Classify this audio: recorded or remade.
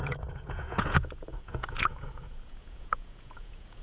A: remade